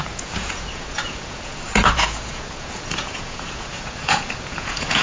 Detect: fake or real fake